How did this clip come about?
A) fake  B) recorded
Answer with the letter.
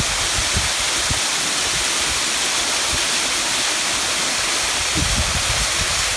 B